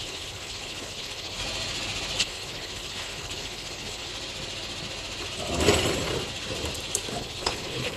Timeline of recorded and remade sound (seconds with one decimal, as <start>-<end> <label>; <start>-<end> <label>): 0.0-1.4 remade; 1.4-2.2 recorded; 2.2-4.1 remade; 4.1-7.1 recorded; 7.1-8.0 remade